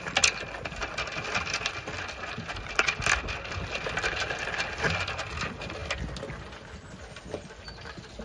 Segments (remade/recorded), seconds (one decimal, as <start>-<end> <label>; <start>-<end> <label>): 0.0-8.2 recorded